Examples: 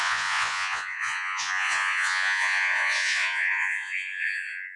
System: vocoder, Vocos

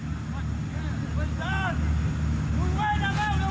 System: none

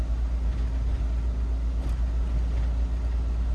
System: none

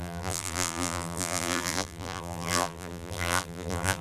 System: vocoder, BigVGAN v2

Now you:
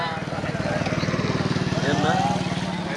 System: none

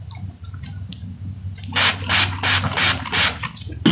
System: none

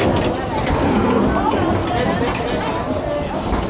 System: none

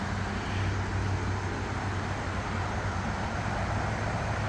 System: none